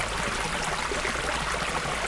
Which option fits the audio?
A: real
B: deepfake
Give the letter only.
A